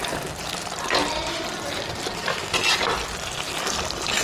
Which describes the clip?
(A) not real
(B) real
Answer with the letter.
B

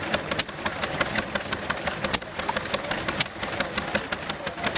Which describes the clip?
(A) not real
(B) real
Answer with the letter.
B